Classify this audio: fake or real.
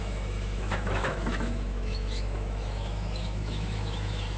fake